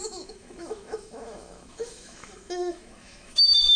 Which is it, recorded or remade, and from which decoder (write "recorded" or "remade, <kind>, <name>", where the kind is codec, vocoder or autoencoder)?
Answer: remade, autoencoder, DAC-VAE